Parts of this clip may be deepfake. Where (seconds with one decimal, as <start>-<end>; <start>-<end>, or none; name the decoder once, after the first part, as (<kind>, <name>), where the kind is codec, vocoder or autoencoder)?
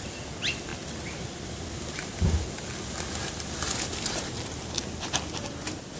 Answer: none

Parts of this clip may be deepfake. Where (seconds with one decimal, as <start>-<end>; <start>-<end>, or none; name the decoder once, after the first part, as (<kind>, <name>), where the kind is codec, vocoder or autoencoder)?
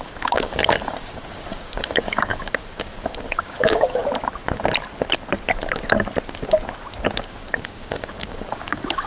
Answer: 0.0-4.0 (codec, DAC); 7.2-9.1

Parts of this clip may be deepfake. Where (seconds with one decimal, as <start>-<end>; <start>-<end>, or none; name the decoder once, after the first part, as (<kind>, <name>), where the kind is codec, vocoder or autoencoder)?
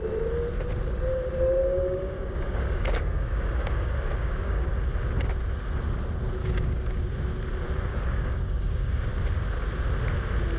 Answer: 1.6-4.7 (codec, DAC); 6.4-7.0; 7.9-9.0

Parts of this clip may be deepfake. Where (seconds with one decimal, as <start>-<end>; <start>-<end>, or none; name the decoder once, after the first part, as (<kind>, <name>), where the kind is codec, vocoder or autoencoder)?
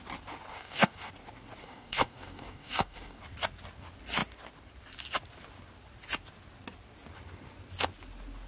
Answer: 0.5-1.1 (codec, DAC); 1.6-3.2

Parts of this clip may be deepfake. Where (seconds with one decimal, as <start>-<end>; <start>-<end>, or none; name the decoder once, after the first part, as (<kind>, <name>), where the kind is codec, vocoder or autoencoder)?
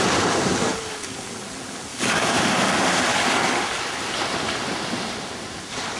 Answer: 0.7-1.3 (codec, DAC); 1.9-2.4; 3.1-3.8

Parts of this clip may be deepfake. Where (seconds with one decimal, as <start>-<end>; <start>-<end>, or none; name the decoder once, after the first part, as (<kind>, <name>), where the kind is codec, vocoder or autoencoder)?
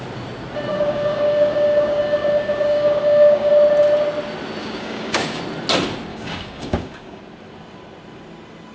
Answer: 0.7-3.5 (codec, DAC); 4.6-5.4; 6.1-7.2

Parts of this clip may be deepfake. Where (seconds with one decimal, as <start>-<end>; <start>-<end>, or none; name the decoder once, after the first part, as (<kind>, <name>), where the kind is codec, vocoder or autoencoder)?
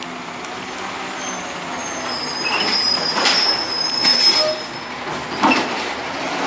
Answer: none